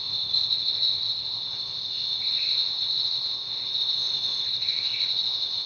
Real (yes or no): no